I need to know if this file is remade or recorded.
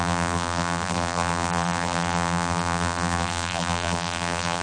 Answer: remade